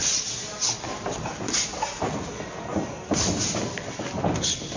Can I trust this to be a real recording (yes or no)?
yes